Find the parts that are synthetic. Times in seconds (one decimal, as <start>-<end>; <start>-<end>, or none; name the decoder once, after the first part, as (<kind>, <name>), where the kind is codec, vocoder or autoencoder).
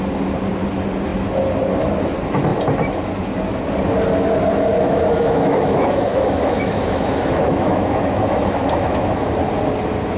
4.7-9.3 (autoencoder, DAC-VAE)